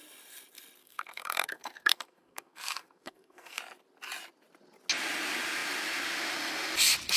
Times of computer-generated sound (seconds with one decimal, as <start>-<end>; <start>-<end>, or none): 0.8-3.6